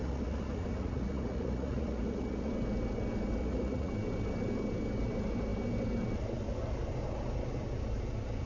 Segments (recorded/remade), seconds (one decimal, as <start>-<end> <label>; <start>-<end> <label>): 0.0-2.5 remade; 2.5-3.4 recorded; 3.4-3.9 remade; 3.9-8.5 recorded